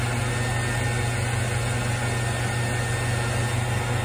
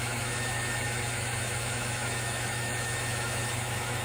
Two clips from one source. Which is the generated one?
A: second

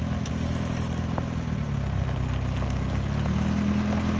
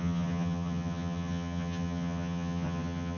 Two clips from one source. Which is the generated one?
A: second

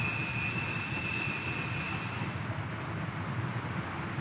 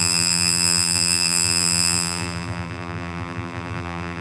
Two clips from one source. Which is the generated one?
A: second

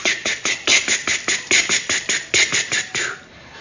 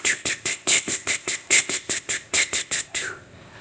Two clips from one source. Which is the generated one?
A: second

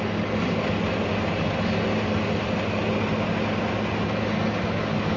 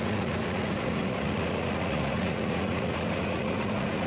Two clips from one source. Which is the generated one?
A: second